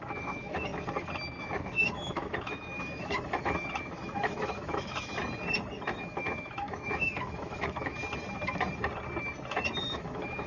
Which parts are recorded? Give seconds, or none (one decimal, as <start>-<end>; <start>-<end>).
0.7-1.4; 5.2-5.9; 8.0-9.8